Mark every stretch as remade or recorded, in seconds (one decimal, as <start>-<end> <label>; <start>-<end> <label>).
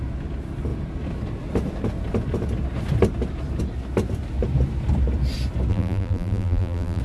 0.0-5.7 recorded; 5.7-7.0 remade